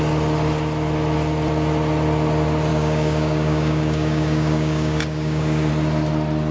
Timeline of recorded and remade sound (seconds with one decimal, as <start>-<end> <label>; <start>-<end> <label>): 0.0-2.7 recorded; 2.7-5.7 remade; 5.7-6.5 recorded